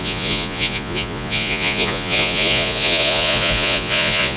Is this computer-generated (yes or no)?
yes